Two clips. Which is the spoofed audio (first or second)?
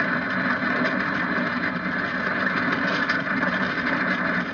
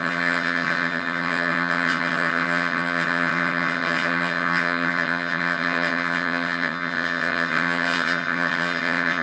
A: second